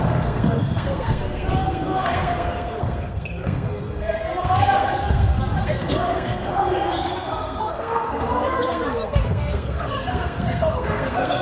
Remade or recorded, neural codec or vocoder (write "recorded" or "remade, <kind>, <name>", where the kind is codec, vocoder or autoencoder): remade, codec, SNAC